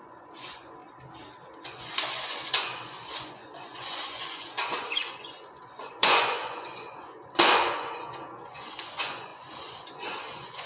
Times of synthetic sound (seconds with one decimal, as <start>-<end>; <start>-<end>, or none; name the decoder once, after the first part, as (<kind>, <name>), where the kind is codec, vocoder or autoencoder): 0.0-0.8 (vocoder, Vocos); 1.6-10.7